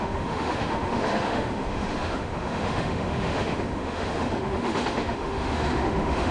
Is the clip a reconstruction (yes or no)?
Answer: yes